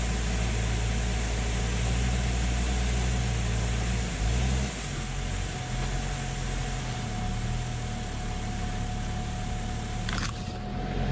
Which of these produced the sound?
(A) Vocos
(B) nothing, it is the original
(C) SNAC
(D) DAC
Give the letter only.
B